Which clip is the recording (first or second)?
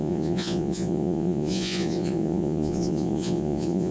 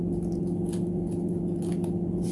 second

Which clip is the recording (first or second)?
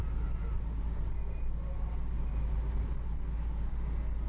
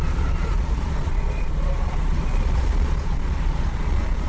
first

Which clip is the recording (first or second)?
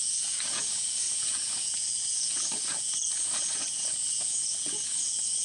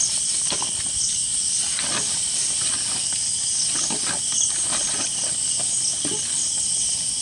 second